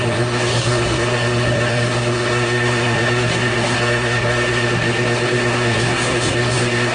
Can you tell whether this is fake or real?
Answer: fake